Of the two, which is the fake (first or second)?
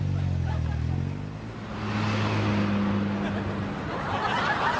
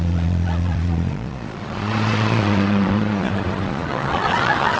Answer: second